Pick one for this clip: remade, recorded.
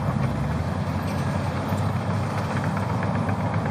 recorded